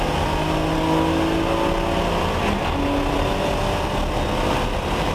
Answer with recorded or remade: recorded